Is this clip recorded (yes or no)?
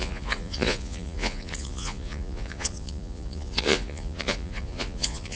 no